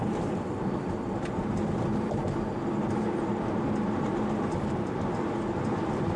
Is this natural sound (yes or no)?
yes